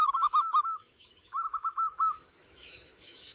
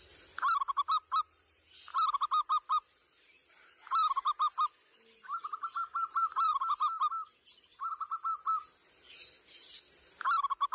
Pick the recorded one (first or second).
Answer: second